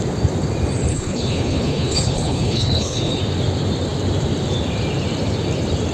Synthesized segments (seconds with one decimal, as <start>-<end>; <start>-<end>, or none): 0.9-3.2